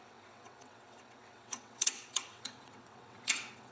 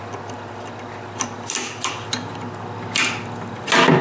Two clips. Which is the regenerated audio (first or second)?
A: first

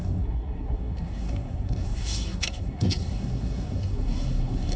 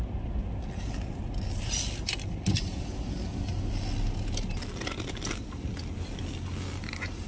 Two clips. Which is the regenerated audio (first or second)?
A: first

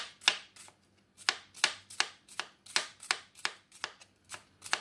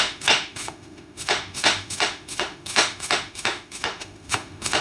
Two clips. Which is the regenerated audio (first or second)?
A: second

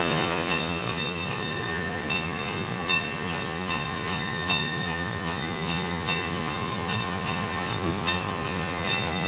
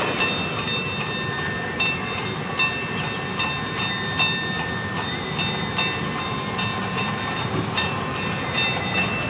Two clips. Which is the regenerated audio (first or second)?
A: first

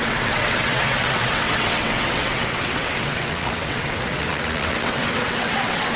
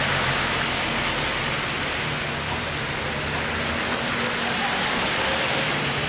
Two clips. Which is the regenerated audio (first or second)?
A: first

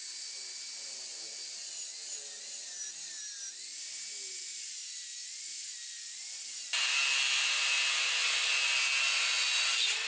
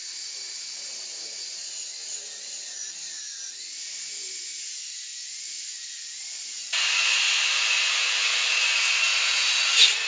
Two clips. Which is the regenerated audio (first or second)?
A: second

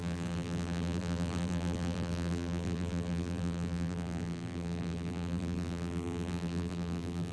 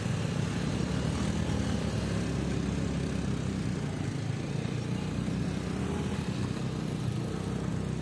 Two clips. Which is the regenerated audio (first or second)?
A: first